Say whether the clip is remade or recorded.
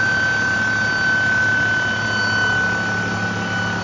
recorded